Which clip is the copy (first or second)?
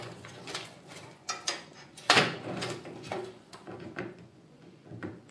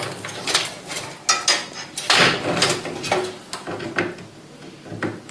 first